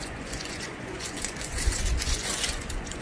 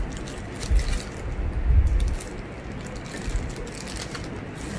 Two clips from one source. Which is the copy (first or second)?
first